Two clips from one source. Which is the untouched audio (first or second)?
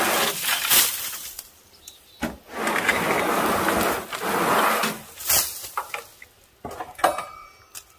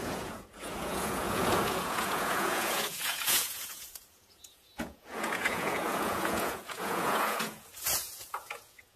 first